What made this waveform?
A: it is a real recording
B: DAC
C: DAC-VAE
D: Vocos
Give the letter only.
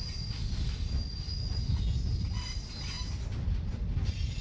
A